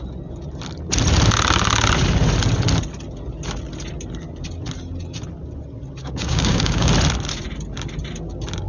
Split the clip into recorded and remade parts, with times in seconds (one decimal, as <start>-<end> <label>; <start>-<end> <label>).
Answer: 0.0-6.0 recorded; 6.0-6.9 remade; 6.9-8.7 recorded